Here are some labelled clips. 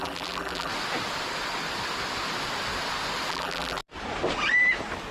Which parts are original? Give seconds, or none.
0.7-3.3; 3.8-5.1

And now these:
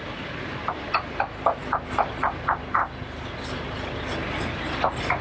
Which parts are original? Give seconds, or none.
2.8-5.2

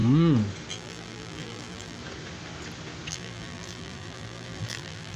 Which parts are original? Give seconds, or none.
0.0-0.7; 2.0-3.1

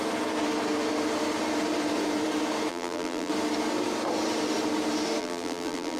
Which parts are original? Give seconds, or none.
0.0-2.7; 3.3-5.2

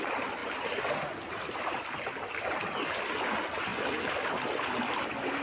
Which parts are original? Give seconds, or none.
none

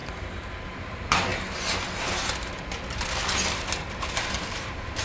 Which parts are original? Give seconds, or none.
0.0-0.7; 1.3-4.1